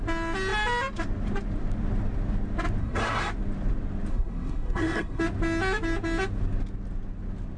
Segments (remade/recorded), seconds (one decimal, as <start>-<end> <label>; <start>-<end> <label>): 0.0-2.8 recorded; 2.8-3.3 remade; 3.3-4.1 recorded; 4.1-5.2 remade; 5.2-7.6 recorded